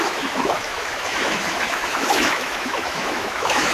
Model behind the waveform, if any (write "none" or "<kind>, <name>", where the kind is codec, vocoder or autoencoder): autoencoder, DAC-VAE